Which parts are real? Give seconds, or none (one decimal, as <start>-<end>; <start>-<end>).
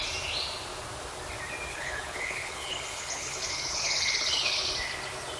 0.0-1.7; 4.7-5.4